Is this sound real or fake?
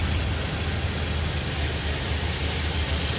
real